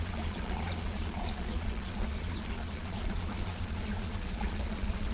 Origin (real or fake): fake